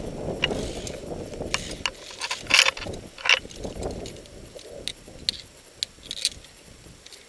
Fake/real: real